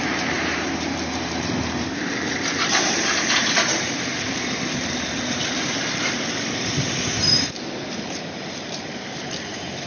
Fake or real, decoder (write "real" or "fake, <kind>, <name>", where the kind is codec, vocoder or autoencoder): fake, vocoder, BigVGAN v2